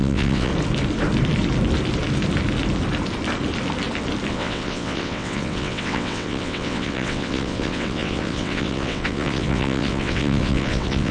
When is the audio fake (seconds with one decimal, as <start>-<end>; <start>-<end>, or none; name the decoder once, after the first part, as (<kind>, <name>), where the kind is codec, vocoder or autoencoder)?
0.0-0.5 (vocoder, WaveNeXt); 4.3-11.1